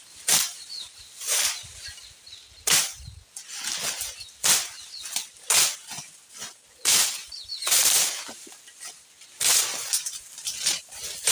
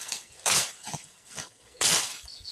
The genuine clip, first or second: first